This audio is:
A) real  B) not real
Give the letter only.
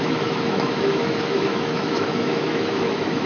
B